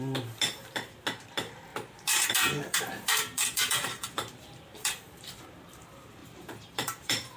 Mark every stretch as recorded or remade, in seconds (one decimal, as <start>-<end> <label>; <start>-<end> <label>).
0.0-1.7 recorded; 1.7-4.9 remade; 4.9-6.2 recorded; 6.2-7.4 remade